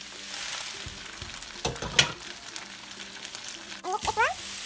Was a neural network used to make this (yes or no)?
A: no